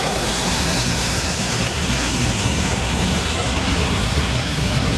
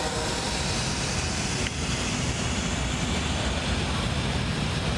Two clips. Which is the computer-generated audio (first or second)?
first